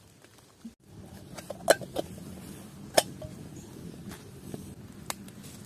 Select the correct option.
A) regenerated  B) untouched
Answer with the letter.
B